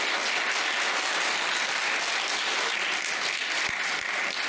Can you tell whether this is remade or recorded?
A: recorded